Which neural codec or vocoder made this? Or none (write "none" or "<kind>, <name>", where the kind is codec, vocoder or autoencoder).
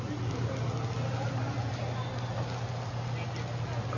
none